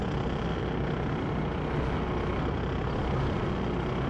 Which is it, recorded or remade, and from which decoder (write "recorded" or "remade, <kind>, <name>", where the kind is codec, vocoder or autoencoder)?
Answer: recorded